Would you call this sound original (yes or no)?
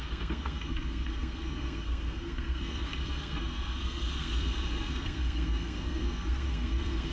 no